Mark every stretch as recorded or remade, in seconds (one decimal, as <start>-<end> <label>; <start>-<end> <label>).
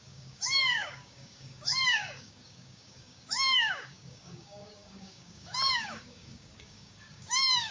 0.0-7.7 remade